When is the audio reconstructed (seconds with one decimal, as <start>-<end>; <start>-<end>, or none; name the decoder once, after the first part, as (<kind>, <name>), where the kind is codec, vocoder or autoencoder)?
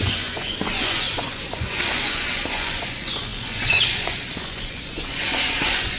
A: 0.0-6.0 (vocoder, Vocos)